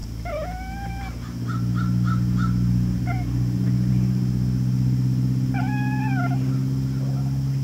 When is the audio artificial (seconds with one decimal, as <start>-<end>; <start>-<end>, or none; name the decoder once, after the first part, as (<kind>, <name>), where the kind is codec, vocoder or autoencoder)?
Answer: none